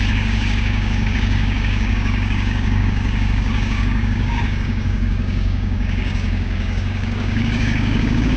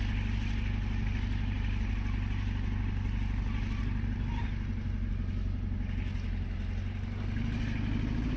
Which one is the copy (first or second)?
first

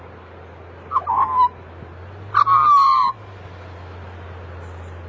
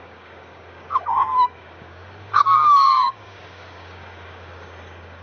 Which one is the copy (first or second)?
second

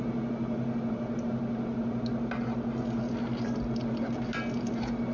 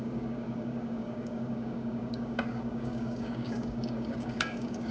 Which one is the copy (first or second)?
second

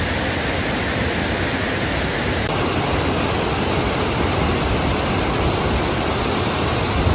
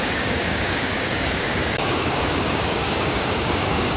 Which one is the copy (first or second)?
second